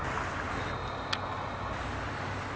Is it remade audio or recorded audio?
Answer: recorded